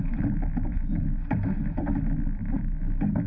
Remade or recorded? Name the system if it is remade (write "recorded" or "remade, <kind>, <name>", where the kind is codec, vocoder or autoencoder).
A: recorded